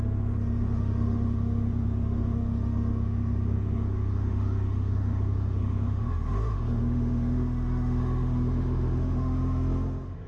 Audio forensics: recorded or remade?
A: remade